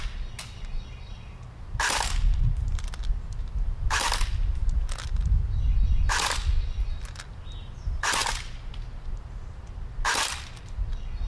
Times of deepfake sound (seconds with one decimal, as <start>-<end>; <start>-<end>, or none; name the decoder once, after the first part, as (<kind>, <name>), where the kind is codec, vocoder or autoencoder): none